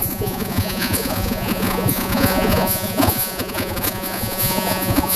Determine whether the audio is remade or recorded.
remade